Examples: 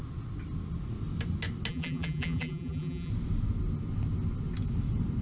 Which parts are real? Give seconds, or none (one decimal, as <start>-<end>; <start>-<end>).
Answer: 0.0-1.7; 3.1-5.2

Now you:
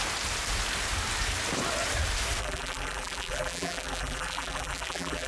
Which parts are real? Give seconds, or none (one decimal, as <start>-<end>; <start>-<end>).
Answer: 0.0-2.4

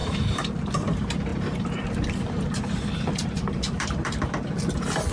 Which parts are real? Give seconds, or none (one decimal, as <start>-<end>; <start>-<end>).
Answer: 0.0-1.3; 4.4-5.1

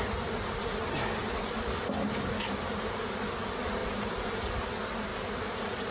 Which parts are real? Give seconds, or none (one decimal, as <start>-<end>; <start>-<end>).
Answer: 0.0-1.2; 3.0-3.8; 4.5-5.1

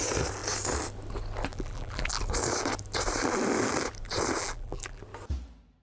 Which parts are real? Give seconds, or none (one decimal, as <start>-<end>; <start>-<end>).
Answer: 0.0-1.5; 2.2-4.4; 5.0-5.8

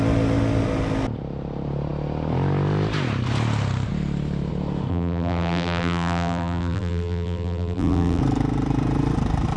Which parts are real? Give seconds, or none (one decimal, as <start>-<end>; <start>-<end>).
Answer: 0.0-4.9; 8.2-9.6